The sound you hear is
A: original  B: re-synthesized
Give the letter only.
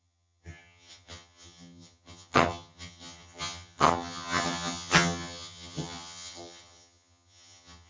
B